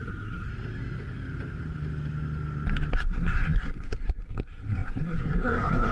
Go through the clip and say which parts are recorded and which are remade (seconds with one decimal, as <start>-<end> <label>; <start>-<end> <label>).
0.0-0.5 remade; 0.5-2.9 recorded; 2.9-5.9 remade